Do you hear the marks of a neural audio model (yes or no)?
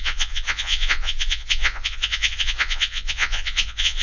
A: yes